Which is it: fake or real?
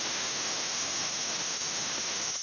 fake